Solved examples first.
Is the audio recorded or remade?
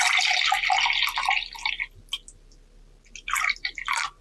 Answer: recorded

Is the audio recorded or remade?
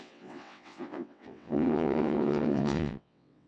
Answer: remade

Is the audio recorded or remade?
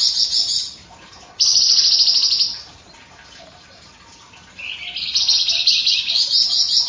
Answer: recorded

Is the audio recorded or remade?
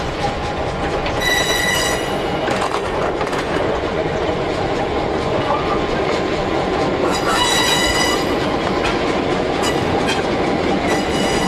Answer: remade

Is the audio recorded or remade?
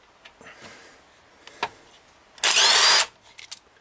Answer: recorded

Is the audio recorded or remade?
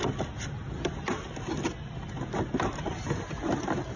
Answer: recorded